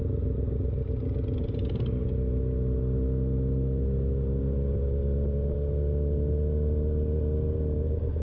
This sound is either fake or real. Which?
real